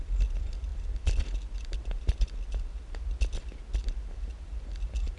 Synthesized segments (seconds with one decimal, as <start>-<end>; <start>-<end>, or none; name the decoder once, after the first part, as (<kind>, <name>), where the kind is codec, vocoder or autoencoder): none

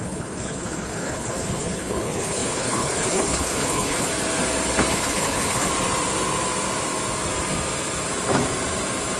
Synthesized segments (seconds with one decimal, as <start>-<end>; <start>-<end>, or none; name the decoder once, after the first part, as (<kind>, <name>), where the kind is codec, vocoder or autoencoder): 0.0-4.1 (codec, HILCodec); 4.9-5.7

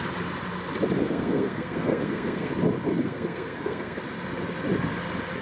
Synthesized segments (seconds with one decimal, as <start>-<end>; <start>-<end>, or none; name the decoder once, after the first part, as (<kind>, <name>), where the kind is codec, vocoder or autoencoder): 1.0-2.5 (codec, SNAC); 2.9-4.0